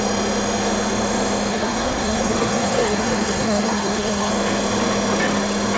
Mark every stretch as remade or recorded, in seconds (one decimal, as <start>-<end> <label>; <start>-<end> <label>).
0.0-1.5 recorded; 1.5-4.3 remade; 4.3-5.8 recorded